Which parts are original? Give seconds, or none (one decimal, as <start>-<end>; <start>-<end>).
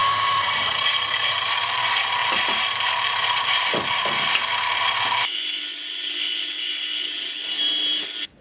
1.8-2.2; 3.7-8.4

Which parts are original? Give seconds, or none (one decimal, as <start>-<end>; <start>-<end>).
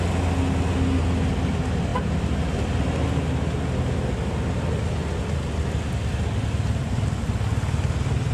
0.0-1.9; 2.8-8.3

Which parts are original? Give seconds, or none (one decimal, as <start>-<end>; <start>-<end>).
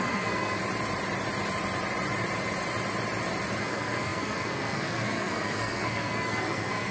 0.6-3.6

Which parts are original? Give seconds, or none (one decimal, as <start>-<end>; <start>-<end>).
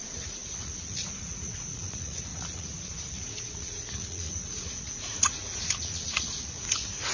none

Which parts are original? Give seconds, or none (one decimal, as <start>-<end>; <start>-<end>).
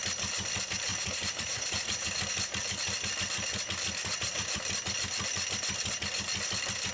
0.0-0.9; 2.2-4.0; 4.6-6.9